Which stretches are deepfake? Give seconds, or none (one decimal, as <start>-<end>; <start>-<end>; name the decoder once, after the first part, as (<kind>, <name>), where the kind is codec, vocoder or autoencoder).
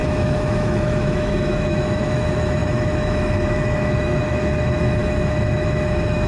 0.0-6.3 (autoencoder, DAC-VAE)